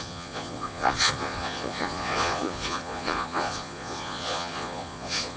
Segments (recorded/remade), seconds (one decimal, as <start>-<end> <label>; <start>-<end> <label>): 0.0-5.4 remade